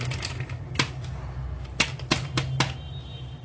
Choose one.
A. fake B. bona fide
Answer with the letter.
B